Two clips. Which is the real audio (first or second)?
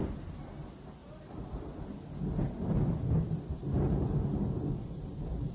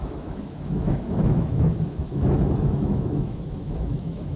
first